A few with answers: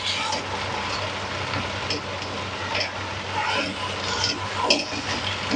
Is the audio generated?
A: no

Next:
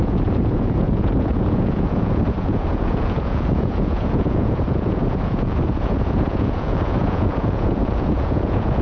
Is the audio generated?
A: yes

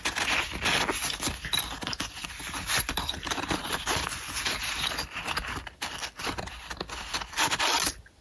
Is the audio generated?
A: no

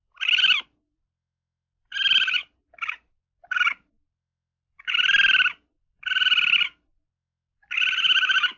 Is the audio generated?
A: yes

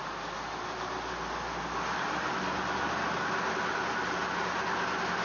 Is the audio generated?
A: no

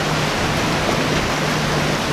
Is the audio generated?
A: no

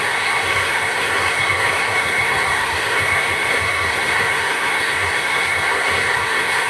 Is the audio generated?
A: yes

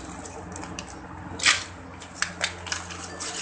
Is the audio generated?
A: no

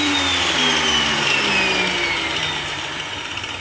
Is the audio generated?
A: no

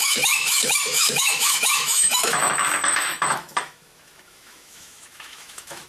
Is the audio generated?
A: yes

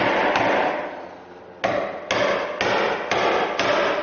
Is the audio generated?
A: no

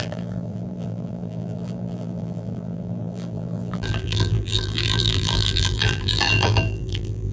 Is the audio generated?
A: yes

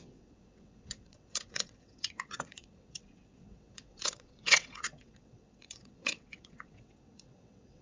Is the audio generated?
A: yes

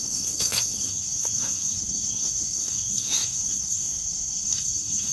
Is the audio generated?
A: yes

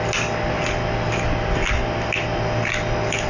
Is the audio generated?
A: no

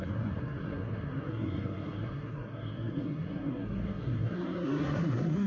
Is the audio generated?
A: yes